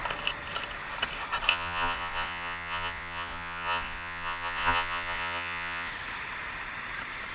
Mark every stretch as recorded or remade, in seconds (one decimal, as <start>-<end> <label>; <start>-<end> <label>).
0.0-1.5 recorded; 1.5-5.9 remade; 5.9-7.3 recorded